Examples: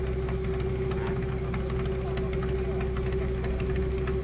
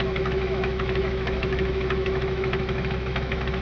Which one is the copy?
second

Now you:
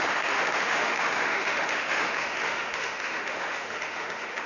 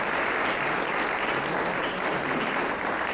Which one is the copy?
first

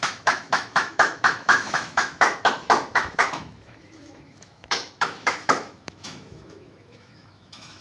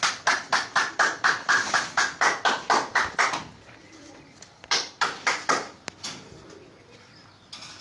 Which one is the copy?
first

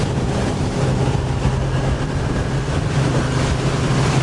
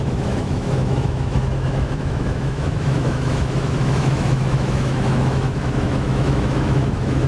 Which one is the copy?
second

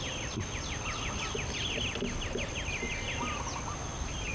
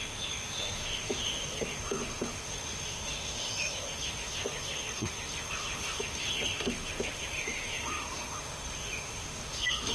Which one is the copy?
second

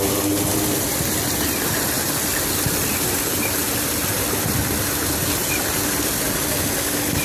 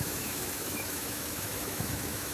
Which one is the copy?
second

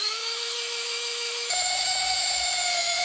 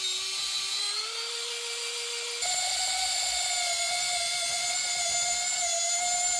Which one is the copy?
first